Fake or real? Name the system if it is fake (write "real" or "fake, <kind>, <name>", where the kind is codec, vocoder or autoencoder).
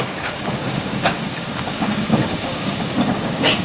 fake, codec, DAC